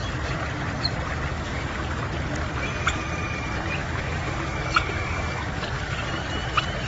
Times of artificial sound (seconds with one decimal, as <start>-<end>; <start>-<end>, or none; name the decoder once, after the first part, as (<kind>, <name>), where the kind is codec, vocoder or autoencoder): 1.3-2.0 (codec, DAC); 3.8-6.0